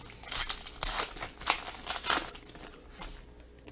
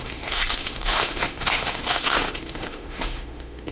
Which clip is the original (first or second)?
first